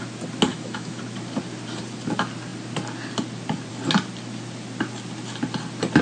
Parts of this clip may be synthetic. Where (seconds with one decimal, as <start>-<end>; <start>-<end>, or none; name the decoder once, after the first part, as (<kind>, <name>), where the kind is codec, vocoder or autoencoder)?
0.5-1.0 (autoencoder, DAC-VAE)